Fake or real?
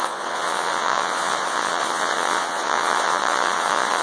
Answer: fake